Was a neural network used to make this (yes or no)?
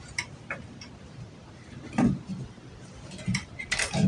no